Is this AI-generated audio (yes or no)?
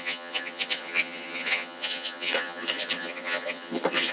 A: yes